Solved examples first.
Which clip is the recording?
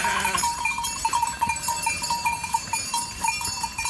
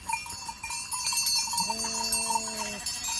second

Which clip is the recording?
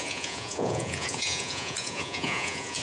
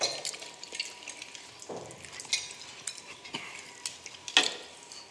second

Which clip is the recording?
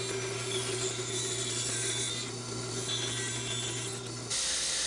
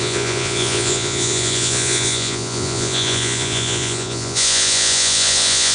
first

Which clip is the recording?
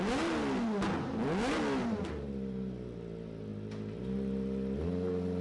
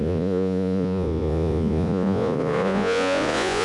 first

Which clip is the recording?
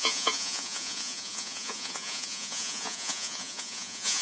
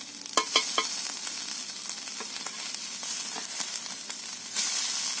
second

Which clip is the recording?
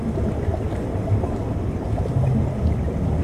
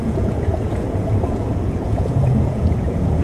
first